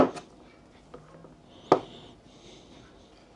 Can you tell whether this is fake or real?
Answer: real